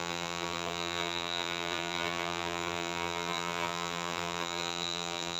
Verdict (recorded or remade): remade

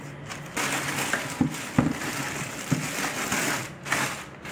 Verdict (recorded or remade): recorded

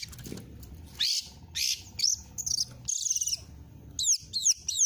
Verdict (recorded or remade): recorded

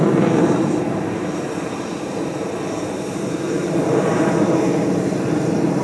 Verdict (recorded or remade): remade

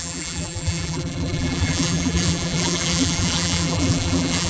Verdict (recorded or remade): remade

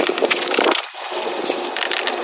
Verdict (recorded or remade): recorded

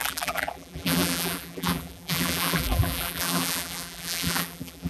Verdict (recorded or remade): remade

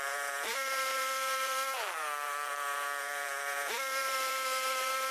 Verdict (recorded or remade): remade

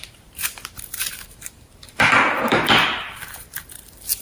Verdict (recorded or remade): remade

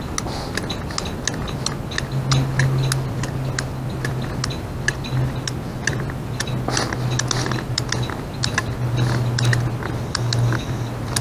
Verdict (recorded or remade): recorded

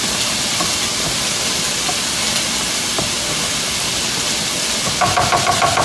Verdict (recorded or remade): recorded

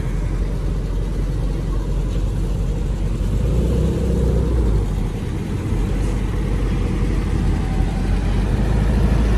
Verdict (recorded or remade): recorded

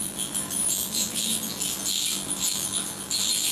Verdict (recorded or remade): remade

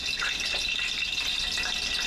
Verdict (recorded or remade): recorded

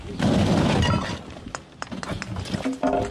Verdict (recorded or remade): recorded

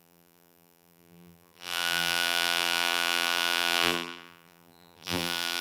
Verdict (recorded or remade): remade